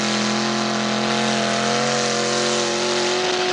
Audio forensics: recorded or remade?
recorded